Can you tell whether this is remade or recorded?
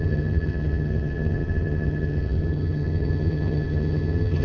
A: remade